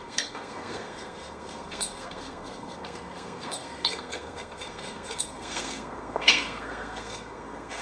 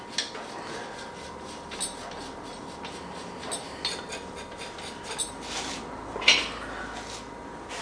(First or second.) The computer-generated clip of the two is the first